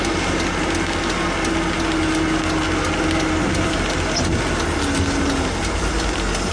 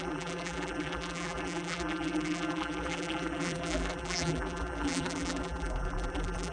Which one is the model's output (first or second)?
second